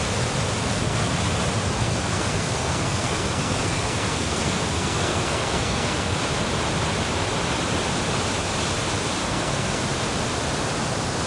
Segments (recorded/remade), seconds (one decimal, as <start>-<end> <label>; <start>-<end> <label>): 0.0-0.6 recorded; 0.6-1.1 remade; 1.1-1.8 recorded; 1.8-6.2 remade; 6.2-9.2 recorded; 9.2-9.8 remade; 9.8-11.3 recorded